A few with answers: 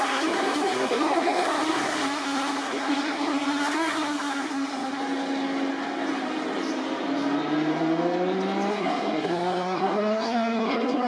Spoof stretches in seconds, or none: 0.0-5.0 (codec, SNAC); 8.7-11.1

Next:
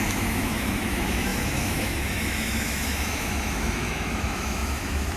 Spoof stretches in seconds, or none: 0.0-5.2 (autoencoder, DAC-VAE)

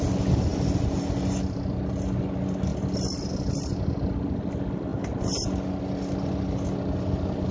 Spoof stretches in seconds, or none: none

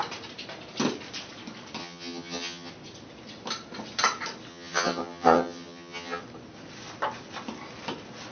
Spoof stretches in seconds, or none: 1.8-2.7 (vocoder, HiFi-GAN); 4.5-6.2

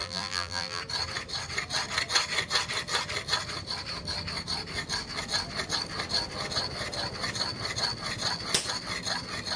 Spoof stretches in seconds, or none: 0.0-0.8 (vocoder, BigVGAN v2)

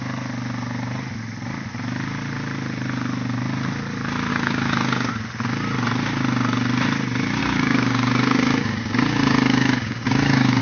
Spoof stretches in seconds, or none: 4.3-5.1 (codec, DAC); 7.4-10.6